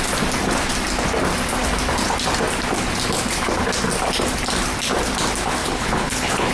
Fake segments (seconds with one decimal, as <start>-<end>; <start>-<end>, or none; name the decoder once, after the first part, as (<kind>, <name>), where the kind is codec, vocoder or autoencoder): 5.6-6.5 (codec, HILCodec)